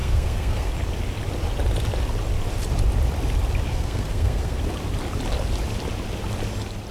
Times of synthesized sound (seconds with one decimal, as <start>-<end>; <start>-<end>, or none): 0.0-0.7; 3.7-4.6